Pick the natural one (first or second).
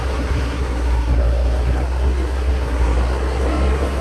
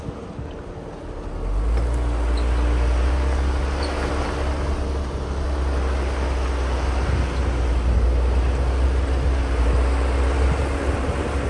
second